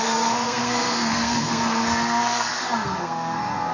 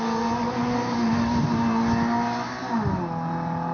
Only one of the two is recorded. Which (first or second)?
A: second